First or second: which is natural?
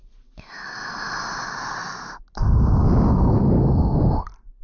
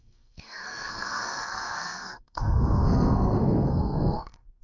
first